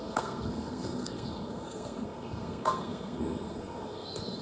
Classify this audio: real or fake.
fake